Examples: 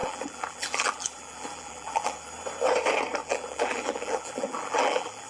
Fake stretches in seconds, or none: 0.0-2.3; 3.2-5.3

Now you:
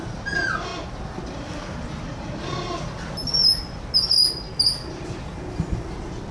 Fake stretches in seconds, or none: none

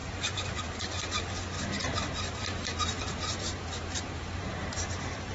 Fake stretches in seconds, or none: 0.0-1.2; 1.8-5.3

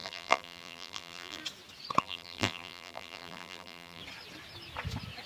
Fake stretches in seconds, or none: 0.0-1.4; 2.0-4.0